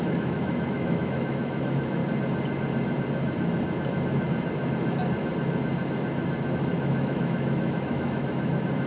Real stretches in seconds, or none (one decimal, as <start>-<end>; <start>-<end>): 2.0-6.5